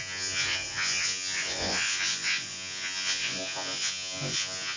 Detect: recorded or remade remade